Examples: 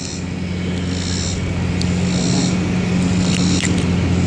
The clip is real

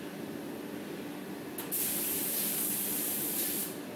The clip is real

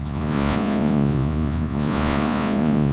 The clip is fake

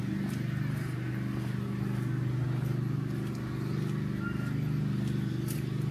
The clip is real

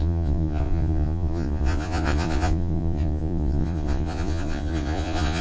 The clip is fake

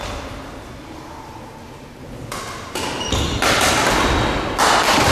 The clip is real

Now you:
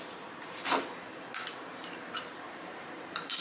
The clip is fake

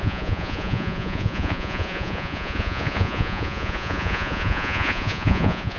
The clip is fake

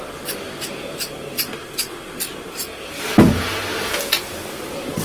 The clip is real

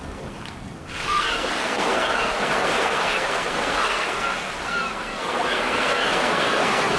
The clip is fake